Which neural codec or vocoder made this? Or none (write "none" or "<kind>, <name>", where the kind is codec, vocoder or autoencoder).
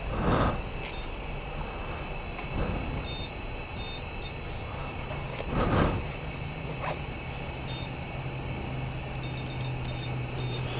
none